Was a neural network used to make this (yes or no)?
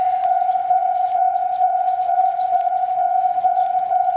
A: yes